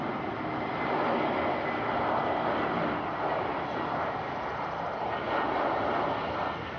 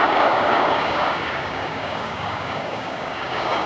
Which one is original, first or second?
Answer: first